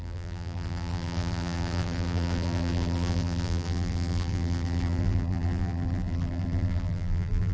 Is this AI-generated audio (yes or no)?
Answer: yes